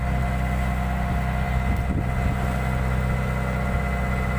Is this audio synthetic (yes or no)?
no